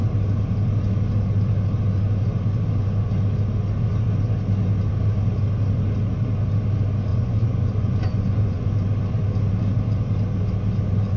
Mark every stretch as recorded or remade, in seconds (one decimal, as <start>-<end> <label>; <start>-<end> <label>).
0.0-7.1 recorded; 7.1-8.7 remade; 8.7-11.2 recorded